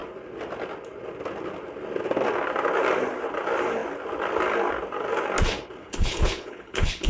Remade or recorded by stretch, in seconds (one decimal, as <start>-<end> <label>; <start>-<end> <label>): 0.0-5.8 recorded; 5.8-7.1 remade